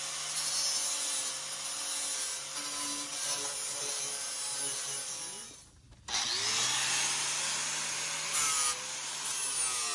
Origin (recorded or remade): recorded